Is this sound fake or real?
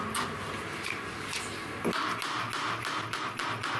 real